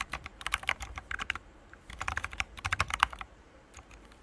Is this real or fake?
fake